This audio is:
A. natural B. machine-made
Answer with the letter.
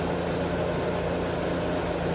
A